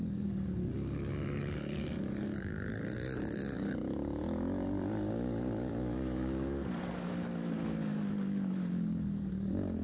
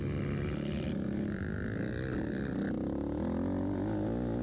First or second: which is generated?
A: first